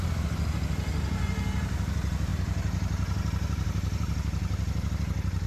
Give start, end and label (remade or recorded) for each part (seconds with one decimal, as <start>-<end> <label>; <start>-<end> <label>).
0.0-5.5 recorded